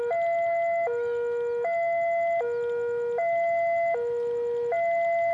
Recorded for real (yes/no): yes